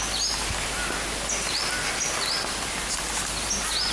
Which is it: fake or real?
real